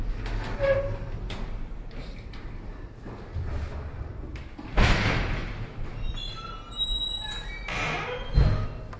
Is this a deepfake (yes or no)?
no